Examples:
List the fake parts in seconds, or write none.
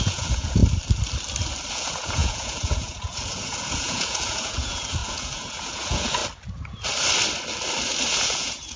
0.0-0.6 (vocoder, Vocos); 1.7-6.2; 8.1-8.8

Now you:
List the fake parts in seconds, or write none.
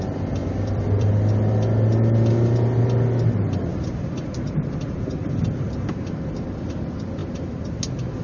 0.4-1.1 (vocoder, BigVGAN v2); 3.7-5.7